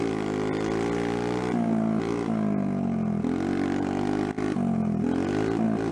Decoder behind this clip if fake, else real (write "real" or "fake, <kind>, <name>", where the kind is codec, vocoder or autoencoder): real